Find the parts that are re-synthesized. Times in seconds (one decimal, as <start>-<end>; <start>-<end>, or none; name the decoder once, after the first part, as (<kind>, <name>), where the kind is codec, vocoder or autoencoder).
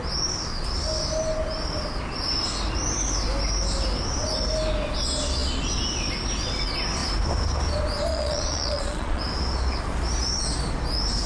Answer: 8.1-9.2 (vocoder, Vocos)